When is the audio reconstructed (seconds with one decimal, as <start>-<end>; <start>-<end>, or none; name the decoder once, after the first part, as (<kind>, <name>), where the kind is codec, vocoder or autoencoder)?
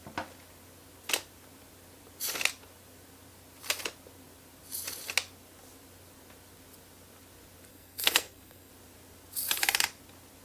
7.7-8.7 (codec, SNAC)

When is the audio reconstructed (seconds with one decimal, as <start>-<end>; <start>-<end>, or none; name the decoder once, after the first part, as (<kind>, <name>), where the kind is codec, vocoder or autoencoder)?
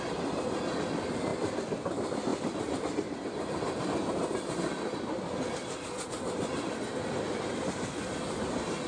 none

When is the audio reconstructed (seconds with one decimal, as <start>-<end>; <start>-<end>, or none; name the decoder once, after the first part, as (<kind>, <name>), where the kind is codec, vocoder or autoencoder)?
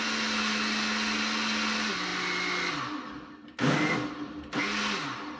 none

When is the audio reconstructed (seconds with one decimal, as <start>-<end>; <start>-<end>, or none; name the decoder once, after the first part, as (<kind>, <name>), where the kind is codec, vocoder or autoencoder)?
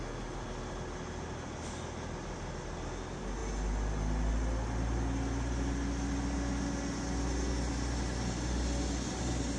none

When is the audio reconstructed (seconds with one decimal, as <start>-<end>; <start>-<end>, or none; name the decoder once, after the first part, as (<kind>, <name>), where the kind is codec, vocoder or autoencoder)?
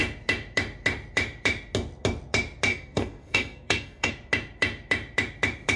2.7-4.1 (codec, SNAC)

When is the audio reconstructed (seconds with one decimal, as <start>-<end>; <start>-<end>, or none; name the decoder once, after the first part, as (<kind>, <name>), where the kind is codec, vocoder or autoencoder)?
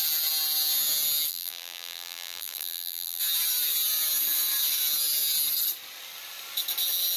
1.3-3.2 (vocoder, BigVGAN v2)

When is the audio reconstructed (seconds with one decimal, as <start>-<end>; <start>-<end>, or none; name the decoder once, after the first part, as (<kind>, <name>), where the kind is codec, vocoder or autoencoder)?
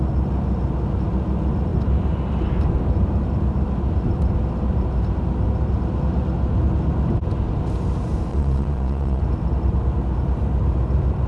8.3-9.2 (vocoder, Vocos)